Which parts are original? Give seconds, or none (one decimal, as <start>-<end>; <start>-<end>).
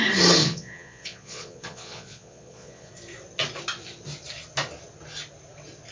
0.0-0.4; 2.9-5.9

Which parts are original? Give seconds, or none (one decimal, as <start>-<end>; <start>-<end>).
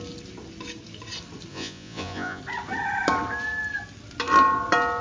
0.0-1.5; 2.4-5.0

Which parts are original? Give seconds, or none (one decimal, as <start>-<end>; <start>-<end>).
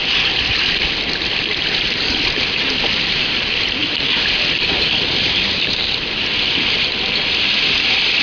none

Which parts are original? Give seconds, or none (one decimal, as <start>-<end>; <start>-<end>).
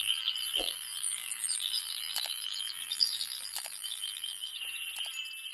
4.5-5.5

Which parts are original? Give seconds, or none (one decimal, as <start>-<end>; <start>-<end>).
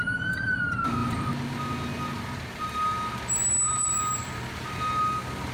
0.0-4.2; 4.8-5.5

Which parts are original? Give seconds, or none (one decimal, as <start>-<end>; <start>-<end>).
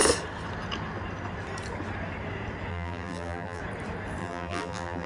0.0-2.7; 3.6-4.2